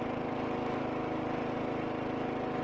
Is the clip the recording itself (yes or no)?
yes